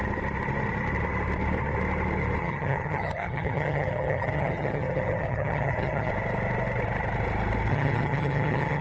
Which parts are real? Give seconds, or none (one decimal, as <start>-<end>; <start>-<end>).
0.0-2.4; 6.1-7.7